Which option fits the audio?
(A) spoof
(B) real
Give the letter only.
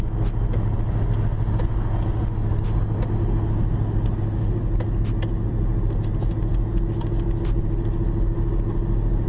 B